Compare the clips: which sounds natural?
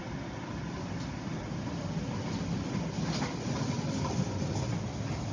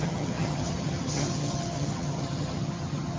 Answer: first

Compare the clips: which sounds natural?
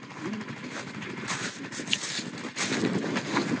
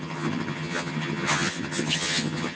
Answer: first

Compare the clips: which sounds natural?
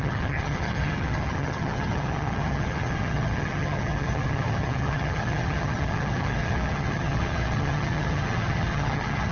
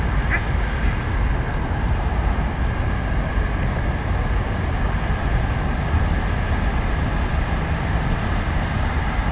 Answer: second